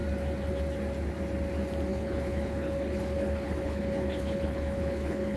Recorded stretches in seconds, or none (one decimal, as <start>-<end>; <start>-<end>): 0.0-1.9